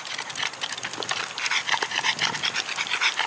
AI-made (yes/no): no